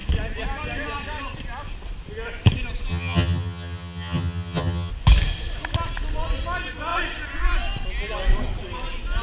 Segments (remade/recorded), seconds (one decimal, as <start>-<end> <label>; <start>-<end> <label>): 0.0-2.9 recorded; 2.9-4.9 remade; 4.9-9.2 recorded